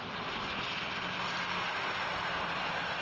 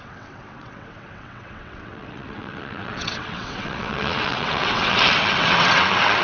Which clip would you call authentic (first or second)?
first